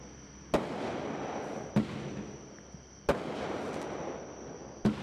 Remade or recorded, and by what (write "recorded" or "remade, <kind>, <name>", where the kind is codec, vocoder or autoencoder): recorded